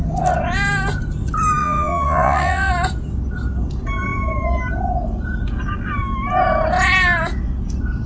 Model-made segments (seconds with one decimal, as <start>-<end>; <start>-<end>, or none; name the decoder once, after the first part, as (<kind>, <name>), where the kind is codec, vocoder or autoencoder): 1.6-2.7 (vocoder, WaveNeXt)